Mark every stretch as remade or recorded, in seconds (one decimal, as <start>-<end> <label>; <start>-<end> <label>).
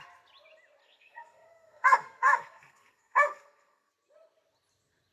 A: 0.0-0.8 recorded; 0.8-3.9 remade; 3.9-5.1 recorded